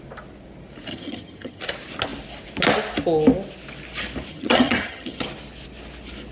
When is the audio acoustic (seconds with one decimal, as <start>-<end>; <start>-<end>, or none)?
0.0-0.9; 1.6-4.3; 5.2-6.3